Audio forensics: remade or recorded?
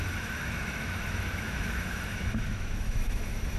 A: remade